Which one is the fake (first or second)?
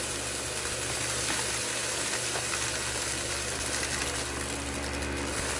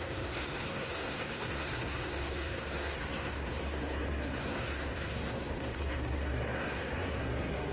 second